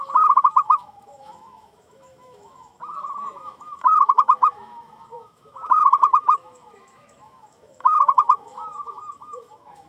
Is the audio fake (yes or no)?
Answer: yes